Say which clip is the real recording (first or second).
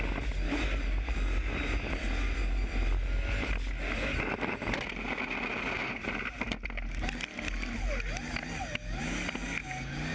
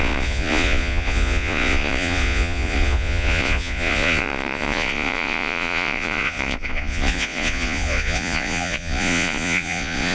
first